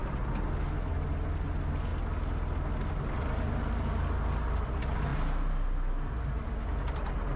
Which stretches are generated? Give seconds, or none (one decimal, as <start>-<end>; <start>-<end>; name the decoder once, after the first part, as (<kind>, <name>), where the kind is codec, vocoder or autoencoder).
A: none